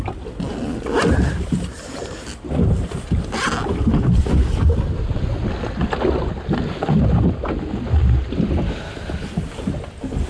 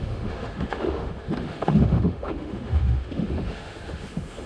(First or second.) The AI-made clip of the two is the second